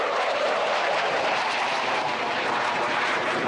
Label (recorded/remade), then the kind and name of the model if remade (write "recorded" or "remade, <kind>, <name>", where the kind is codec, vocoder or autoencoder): remade, vocoder, BigVGAN v2